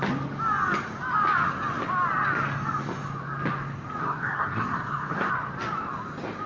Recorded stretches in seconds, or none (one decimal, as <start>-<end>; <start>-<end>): 0.0-4.0; 5.3-6.5